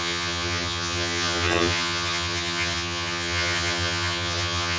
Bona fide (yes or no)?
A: no